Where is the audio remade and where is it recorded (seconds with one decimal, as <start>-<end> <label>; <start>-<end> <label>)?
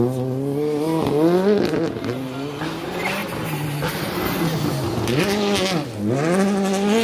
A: 0.0-7.0 recorded